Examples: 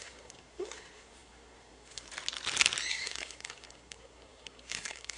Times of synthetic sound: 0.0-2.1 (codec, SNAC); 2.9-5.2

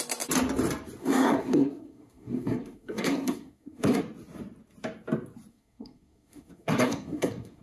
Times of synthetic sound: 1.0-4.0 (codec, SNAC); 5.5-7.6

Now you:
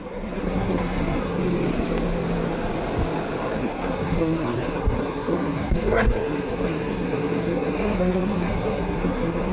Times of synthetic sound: 0.0-1.4 (codec, SNAC); 3.6-9.5

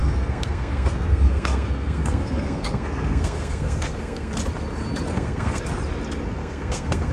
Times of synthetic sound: 0.0-4.3 (codec, SNAC); 5.1-5.6; 6.4-7.1

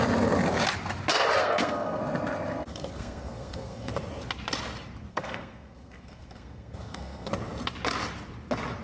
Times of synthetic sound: 1.4-2.0 (codec, SNAC); 2.7-3.9; 5.1-7.3

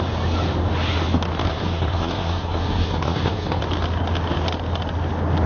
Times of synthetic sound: 1.5-3.6 (codec, SNAC)

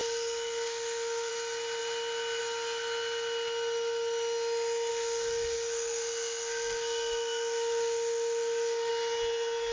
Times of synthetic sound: 0.0-1.3 (codec, SNAC); 4.9-8.9

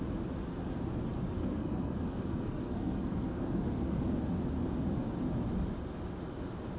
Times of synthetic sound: 1.4-4.0 (codec, SNAC)